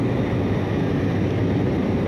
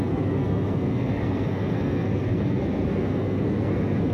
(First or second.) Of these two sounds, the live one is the first